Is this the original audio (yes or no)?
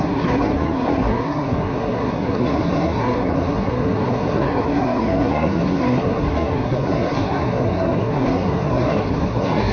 no